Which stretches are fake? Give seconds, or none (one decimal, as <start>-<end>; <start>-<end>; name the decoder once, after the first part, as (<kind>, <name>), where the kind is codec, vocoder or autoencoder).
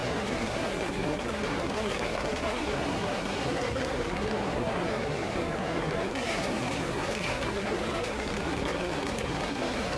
0.0-10.0 (codec, SNAC)